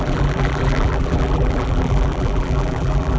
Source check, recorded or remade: remade